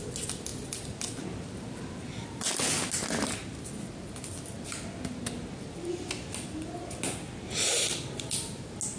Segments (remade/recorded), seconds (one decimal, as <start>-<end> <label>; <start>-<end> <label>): 0.0-9.0 recorded